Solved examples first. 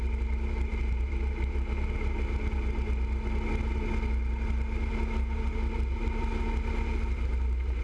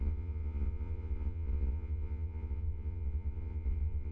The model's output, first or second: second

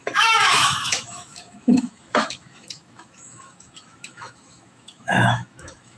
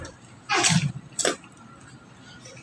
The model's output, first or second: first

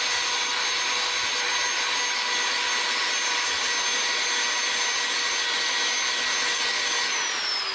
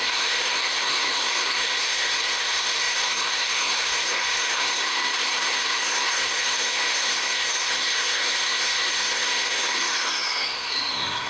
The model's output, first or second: second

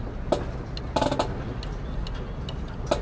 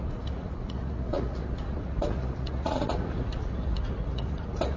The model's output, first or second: second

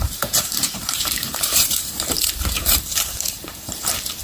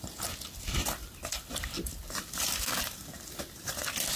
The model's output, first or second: first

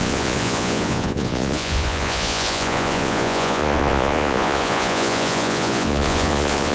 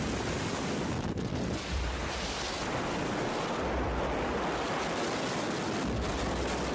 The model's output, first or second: first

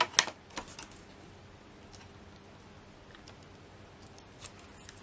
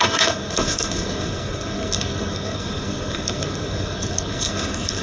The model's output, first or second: second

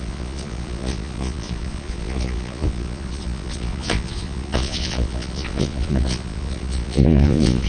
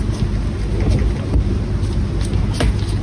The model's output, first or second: first